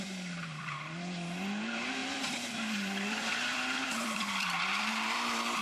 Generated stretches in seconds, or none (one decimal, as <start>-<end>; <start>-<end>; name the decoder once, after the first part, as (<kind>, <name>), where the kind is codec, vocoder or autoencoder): 0.0-5.6 (vocoder, BigVGAN v2)